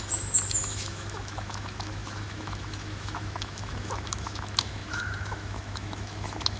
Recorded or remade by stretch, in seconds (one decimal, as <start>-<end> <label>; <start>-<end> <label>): 0.0-6.6 remade